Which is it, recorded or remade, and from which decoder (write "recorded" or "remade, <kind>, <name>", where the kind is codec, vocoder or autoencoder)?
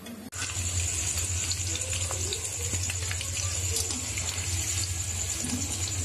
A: recorded